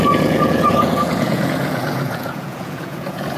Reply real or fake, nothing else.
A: fake